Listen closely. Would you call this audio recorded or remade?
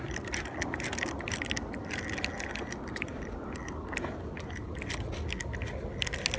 recorded